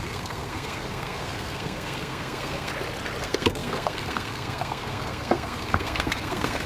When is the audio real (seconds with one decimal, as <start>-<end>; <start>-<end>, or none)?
2.7-3.2